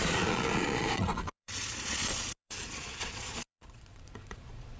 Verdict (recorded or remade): remade